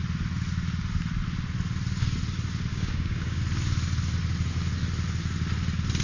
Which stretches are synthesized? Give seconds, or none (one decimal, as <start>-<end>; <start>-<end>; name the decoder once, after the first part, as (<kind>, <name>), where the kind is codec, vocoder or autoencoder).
2.7-3.4 (codec, DAC)